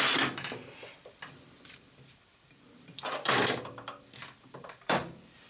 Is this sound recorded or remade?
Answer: remade